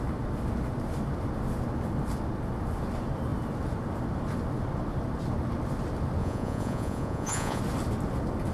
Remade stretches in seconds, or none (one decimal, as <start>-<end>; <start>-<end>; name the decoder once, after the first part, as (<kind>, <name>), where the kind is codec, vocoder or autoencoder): 6.2-7.6 (vocoder, Vocos)